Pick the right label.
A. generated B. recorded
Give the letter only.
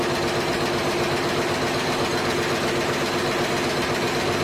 B